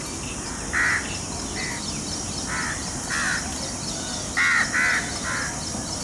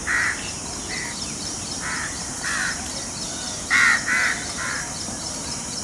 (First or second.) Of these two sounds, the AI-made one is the second